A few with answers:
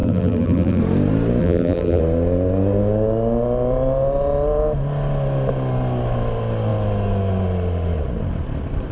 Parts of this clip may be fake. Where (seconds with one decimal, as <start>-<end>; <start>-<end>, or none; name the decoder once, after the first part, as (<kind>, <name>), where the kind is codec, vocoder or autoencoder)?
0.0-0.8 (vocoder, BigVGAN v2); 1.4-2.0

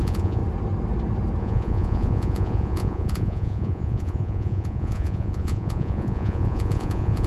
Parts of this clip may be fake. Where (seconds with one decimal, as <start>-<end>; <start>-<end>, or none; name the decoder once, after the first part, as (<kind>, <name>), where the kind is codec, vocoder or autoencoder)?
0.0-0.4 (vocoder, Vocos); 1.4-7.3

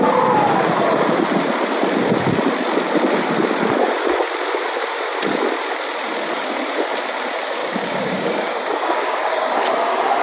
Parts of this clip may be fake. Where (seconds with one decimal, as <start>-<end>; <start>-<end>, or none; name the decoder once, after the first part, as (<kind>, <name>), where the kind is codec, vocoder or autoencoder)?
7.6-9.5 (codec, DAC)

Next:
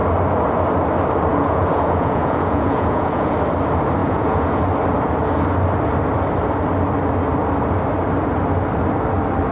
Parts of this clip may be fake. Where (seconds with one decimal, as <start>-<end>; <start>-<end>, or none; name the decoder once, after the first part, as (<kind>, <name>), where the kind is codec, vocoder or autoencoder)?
1.3-3.3 (vocoder, Vocos); 4.0-4.6

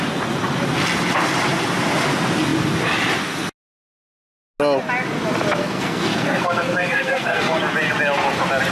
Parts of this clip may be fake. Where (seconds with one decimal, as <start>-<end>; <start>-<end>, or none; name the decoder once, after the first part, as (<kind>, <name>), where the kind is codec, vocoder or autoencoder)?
5.6-7.6 (codec, SNAC)

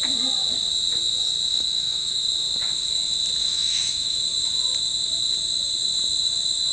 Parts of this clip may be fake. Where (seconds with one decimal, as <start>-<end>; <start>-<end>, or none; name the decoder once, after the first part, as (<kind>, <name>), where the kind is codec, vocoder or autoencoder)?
1.5-2.2 (autoencoder, DAC-VAE); 3.4-4.2